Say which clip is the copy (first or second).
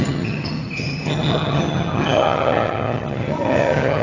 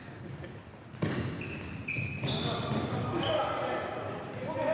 first